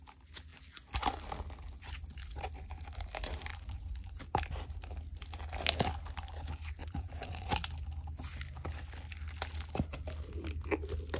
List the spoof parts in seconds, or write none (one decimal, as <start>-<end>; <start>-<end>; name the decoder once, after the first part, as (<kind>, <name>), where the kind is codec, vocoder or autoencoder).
3.5-4.2 (vocoder, Vocos); 6.8-7.5